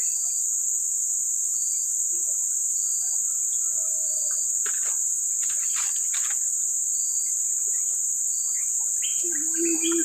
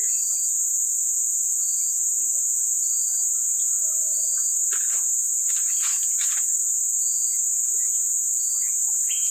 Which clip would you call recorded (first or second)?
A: first